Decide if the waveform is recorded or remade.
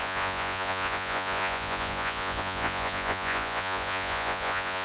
remade